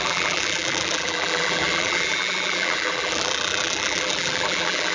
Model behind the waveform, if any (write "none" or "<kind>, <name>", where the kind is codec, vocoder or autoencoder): vocoder, BigVGAN v2